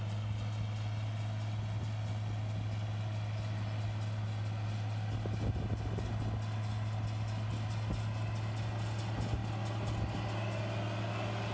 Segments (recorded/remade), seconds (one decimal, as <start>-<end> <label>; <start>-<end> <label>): 0.0-11.5 recorded